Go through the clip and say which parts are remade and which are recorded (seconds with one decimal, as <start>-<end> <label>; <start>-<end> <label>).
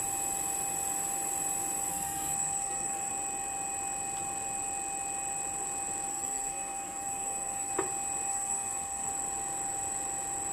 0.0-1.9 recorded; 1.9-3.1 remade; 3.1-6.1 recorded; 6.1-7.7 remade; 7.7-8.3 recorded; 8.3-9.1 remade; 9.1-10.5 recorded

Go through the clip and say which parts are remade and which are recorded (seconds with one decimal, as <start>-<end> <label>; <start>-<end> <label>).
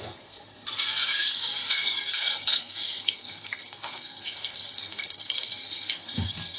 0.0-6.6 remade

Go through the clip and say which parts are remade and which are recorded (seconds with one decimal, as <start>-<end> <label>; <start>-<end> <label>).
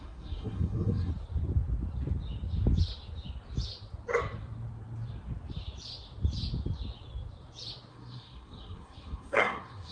0.0-1.1 remade; 1.1-7.9 recorded; 7.9-9.9 remade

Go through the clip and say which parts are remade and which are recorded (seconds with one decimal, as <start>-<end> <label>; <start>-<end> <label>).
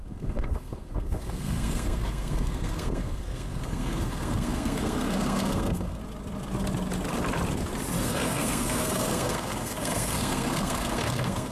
0.0-6.0 remade; 6.0-8.0 recorded; 8.0-11.5 remade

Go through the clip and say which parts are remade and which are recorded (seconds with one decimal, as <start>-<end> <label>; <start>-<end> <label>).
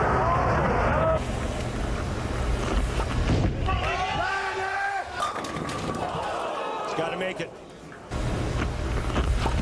0.0-9.6 recorded